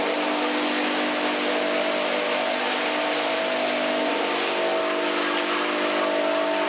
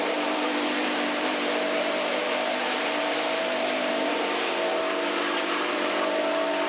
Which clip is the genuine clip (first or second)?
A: first